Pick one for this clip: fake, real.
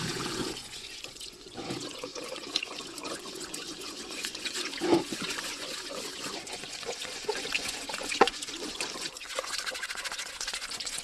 fake